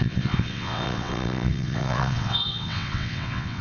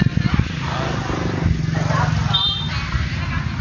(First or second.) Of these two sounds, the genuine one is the second